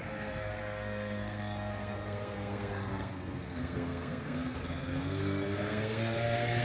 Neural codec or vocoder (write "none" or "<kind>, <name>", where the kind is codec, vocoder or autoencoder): codec, SNAC